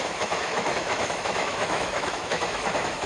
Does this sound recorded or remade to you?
remade